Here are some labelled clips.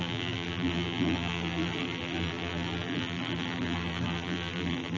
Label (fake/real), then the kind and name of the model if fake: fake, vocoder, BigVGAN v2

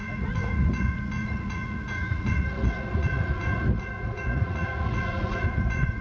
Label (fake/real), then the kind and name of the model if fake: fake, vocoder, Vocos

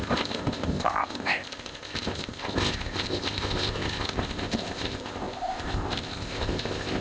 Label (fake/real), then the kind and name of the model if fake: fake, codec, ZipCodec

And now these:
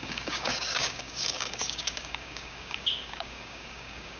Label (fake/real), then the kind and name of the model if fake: fake, codec, DAC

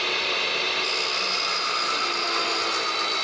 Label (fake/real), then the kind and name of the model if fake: real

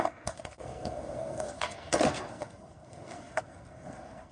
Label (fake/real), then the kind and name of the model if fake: fake, codec, SNAC